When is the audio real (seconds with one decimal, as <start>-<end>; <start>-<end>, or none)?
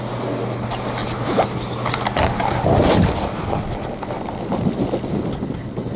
0.0-6.0